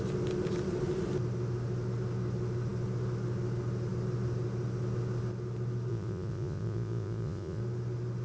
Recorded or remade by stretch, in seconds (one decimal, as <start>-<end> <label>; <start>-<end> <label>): 0.0-5.9 recorded; 5.9-7.6 remade; 7.6-8.2 recorded